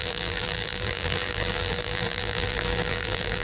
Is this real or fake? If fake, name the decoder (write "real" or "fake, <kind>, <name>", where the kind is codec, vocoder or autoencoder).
fake, vocoder, BigVGAN v2